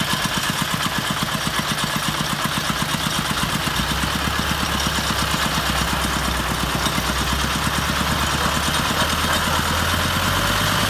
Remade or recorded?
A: recorded